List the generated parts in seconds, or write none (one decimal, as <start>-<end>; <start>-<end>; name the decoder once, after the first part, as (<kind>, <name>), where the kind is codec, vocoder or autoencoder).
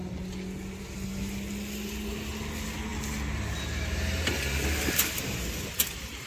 none